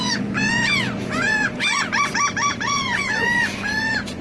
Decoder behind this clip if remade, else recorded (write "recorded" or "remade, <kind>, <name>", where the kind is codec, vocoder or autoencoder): remade, vocoder, Vocos